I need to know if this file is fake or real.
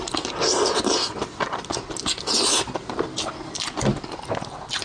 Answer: real